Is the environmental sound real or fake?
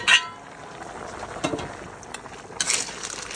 real